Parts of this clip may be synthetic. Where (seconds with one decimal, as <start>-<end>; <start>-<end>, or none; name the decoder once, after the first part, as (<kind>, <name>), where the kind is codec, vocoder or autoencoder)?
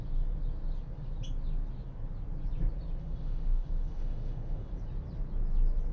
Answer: 3.0-4.7 (autoencoder, DAC-VAE)